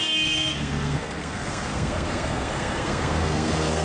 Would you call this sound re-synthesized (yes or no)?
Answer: yes